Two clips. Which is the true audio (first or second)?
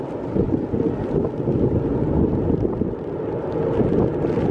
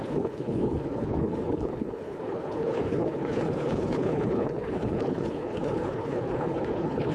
first